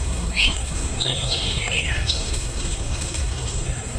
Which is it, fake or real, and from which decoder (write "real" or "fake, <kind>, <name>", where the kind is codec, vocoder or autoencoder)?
fake, codec, SNAC